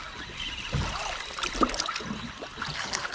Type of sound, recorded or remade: recorded